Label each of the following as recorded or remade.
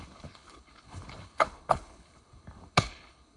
remade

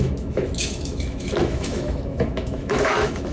remade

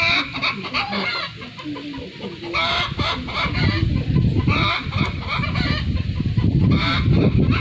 recorded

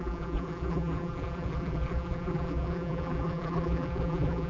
remade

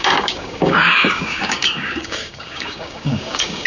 remade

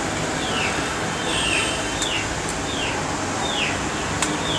recorded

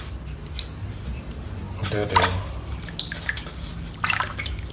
recorded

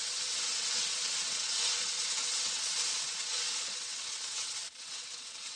remade